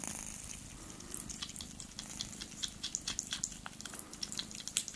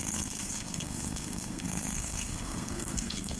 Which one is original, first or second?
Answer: first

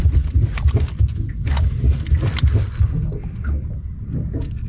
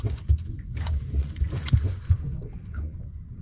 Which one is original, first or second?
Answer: first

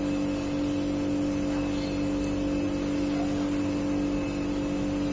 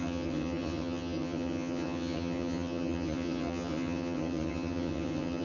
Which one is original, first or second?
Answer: first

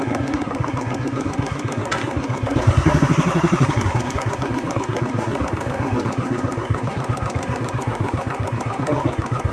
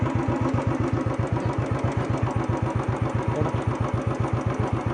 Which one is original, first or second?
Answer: second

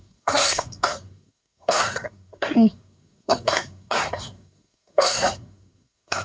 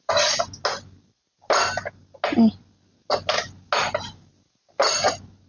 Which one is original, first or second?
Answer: second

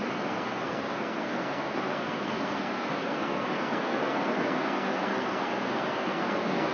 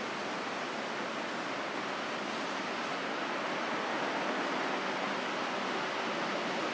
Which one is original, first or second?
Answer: second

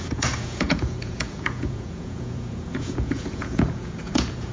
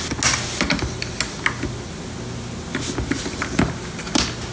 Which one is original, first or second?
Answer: second